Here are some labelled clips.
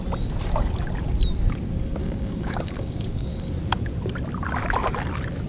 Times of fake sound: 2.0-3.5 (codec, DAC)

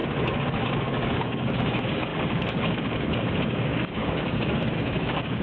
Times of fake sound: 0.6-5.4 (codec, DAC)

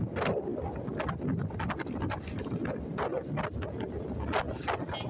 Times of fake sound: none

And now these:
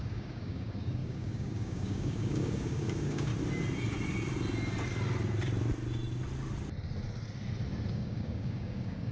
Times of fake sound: 0.0-3.3 (codec, DAC); 7.9-9.1

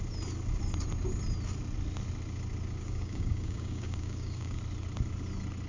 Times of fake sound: 2.8-4.6 (codec, DAC)

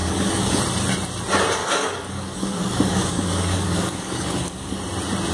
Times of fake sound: 0.0-0.6 (codec, DAC); 1.6-4.8